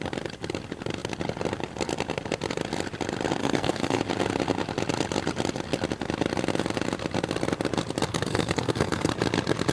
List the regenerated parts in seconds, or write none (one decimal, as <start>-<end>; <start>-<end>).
3.4-4.0; 8.1-9.1